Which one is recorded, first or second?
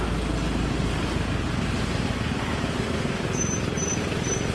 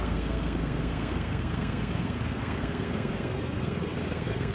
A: first